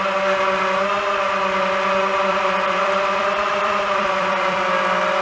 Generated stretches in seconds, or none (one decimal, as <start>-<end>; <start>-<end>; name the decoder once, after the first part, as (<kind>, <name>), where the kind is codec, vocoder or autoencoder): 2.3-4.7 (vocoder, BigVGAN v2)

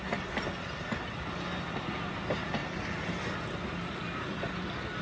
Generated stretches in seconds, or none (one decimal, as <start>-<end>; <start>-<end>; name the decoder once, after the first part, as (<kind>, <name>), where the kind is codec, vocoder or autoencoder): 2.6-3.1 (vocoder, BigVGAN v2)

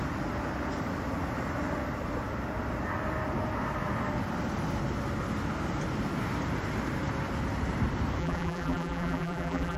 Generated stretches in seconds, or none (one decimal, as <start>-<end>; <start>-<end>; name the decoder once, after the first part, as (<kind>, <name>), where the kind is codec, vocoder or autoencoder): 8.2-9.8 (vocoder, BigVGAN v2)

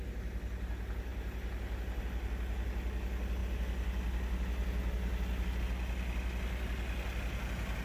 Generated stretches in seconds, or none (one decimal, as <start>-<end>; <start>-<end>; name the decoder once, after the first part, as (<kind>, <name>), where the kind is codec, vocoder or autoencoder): none

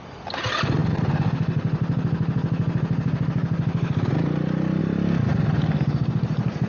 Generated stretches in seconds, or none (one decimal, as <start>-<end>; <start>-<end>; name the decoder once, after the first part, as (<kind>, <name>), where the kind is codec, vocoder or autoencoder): none

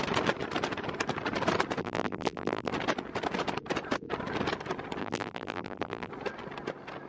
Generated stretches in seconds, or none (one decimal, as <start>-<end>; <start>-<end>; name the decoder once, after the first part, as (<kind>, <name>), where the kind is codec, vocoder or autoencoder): 1.8-2.7 (vocoder, BigVGAN v2); 5.0-6.1